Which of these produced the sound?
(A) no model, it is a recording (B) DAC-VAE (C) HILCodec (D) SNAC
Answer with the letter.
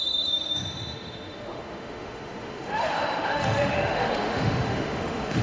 B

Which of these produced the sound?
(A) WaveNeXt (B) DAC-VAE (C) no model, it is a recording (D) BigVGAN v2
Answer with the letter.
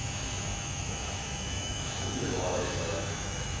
B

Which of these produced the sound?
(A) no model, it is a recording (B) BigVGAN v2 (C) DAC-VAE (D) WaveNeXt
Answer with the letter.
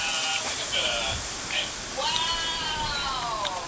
B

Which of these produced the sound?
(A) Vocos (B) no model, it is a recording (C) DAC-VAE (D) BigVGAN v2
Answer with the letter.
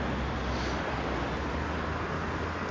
B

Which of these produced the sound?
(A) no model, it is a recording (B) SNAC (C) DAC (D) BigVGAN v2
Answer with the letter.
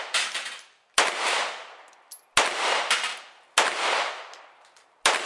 A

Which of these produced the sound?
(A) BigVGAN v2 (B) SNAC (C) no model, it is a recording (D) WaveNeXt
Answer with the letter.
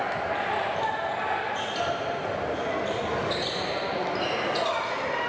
C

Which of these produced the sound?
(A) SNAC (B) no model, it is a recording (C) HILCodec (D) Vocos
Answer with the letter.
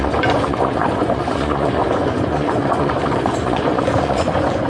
D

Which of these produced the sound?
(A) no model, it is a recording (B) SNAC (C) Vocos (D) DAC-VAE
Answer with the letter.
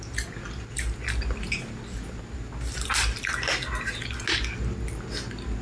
A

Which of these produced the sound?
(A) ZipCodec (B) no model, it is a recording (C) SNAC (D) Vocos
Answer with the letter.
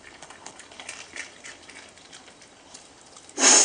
B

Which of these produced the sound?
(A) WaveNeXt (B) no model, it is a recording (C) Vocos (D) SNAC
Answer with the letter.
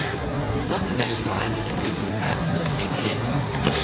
D